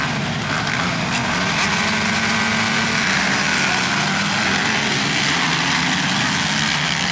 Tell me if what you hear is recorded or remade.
recorded